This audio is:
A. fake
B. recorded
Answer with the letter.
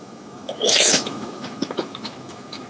A